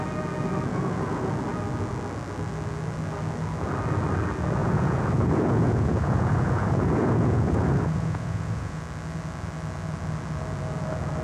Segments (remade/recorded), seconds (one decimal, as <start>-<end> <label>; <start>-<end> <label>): 0.0-0.7 recorded; 0.7-1.3 remade; 1.3-4.6 recorded; 4.6-8.8 remade; 8.8-11.2 recorded